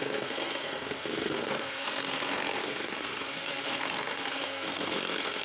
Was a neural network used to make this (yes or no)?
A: yes